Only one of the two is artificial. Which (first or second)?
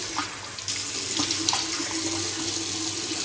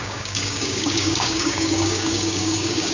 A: second